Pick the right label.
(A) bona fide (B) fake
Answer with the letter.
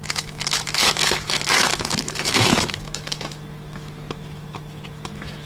B